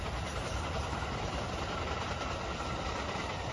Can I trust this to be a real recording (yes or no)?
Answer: no